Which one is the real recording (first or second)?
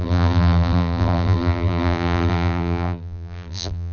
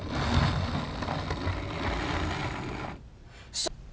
second